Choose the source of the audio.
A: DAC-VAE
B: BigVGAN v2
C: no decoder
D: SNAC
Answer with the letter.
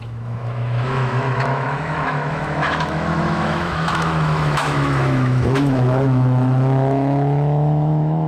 A